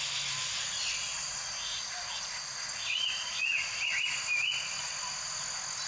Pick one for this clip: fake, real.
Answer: real